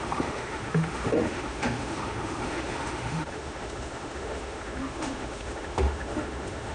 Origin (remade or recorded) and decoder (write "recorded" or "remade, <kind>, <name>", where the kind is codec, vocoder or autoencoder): remade, autoencoder, DAC-VAE